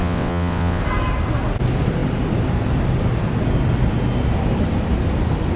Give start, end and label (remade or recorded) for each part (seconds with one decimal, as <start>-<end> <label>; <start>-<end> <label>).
0.0-0.8 remade; 0.8-5.6 recorded